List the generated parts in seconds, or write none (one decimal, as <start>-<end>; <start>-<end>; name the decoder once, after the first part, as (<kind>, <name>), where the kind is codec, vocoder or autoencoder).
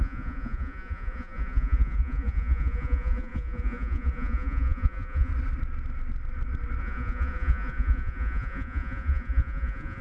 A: 0.0-5.3 (vocoder, Vocos); 6.8-10.0